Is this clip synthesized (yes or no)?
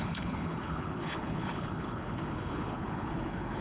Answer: yes